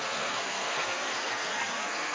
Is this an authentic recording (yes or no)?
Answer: no